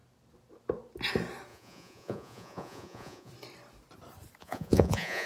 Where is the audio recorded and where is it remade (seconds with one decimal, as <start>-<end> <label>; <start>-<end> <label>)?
0.0-1.5 recorded; 1.5-3.3 remade; 3.3-4.4 recorded; 4.4-5.3 remade